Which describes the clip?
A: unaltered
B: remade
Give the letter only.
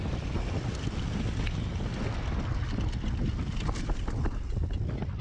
A